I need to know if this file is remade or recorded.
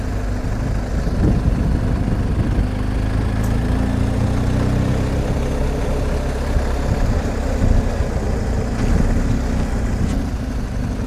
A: recorded